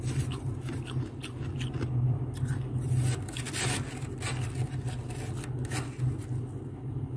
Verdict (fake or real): real